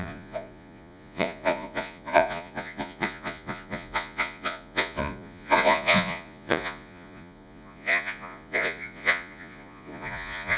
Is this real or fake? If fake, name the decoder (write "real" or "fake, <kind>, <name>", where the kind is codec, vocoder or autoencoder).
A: fake, vocoder, Vocos